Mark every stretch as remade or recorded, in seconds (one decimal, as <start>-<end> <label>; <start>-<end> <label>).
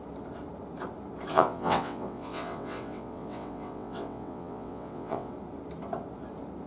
0.0-1.3 recorded; 1.3-5.3 remade; 5.3-6.7 recorded